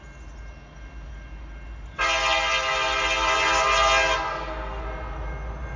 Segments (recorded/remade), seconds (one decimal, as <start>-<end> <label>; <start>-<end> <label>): 0.0-4.3 recorded; 4.3-4.8 remade; 4.8-5.8 recorded